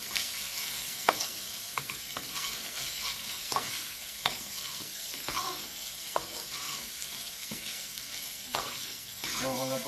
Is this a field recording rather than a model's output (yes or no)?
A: no